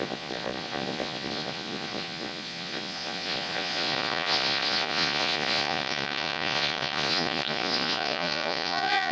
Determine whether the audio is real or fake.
fake